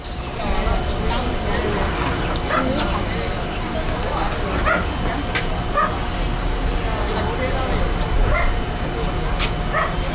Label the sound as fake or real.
real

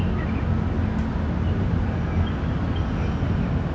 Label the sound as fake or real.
real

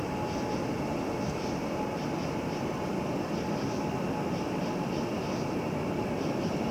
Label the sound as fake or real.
real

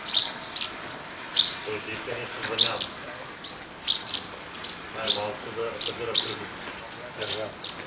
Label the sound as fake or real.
real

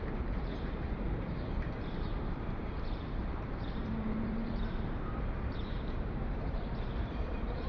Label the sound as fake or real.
fake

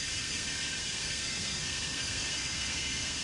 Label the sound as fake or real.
fake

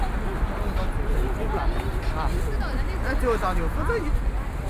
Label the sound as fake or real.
real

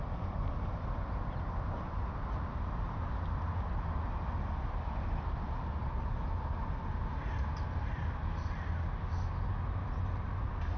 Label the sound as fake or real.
real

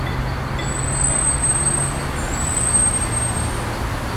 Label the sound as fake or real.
real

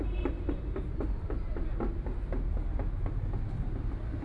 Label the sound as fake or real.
real